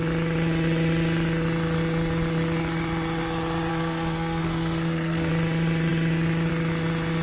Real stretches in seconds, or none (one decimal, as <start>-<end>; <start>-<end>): 0.0-3.7; 5.3-7.2